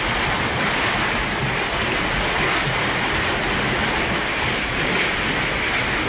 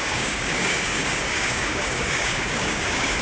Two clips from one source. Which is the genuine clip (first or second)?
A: first